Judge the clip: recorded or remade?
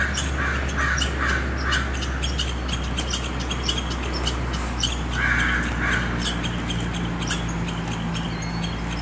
recorded